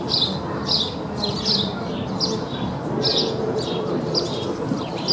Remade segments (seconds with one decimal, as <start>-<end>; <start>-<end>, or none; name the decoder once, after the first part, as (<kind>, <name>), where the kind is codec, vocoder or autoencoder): 3.1-3.7 (vocoder, Vocos)